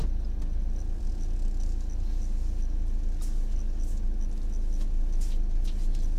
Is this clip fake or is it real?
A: real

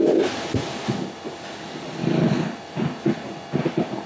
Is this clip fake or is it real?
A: real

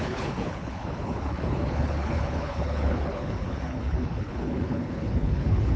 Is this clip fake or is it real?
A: fake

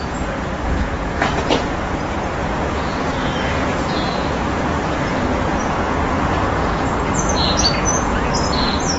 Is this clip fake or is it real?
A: fake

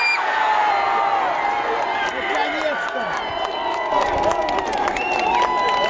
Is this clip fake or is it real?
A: real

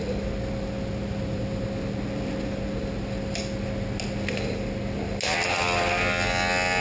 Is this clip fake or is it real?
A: real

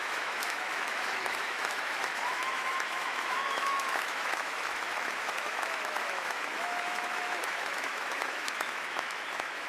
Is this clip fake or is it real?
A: fake